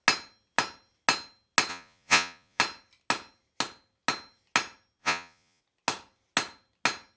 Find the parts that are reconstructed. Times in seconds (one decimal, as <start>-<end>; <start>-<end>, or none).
1.7-2.6; 5.0-5.6